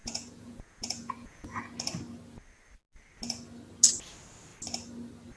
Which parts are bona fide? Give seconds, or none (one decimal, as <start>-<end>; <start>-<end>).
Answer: 1.6-5.4